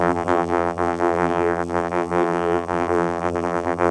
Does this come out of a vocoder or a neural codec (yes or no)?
yes